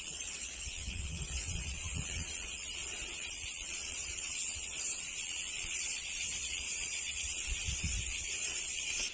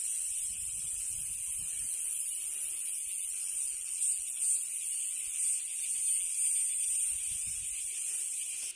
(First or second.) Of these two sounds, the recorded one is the second